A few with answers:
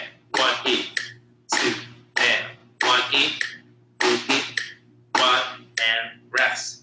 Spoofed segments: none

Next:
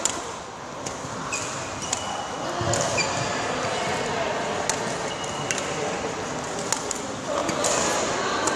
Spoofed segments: none

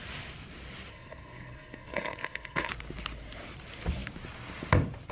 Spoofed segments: 0.9-2.7 (codec, SNAC)